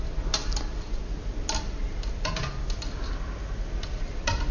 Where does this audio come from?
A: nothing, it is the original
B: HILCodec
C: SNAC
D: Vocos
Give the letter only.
A